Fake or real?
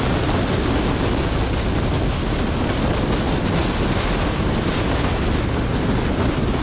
real